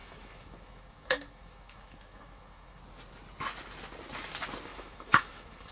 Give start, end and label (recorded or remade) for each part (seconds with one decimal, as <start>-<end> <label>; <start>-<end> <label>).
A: 0.0-2.8 remade; 2.8-4.7 recorded; 4.7-5.7 remade